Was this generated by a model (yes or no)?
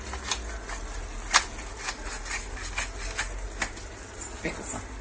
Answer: no